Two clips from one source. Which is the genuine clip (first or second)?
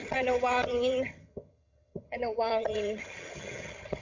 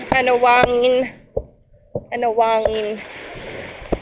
second